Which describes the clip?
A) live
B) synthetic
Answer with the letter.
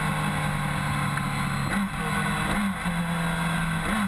A